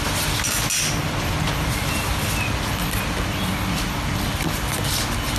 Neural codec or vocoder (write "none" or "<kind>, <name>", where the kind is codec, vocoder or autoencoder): none